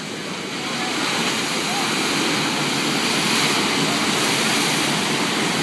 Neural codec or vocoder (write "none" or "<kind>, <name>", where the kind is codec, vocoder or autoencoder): none